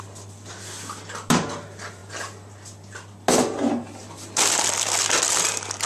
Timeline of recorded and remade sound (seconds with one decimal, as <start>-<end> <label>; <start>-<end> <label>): 0.0-5.9 recorded